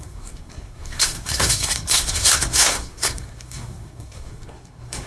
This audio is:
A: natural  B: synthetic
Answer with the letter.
B